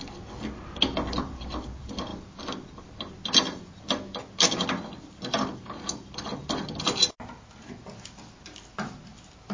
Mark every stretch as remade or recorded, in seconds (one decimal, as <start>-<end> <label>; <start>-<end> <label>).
0.0-9.5 recorded